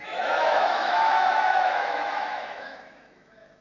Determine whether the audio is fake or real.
fake